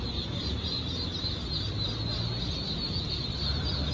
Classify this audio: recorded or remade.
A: recorded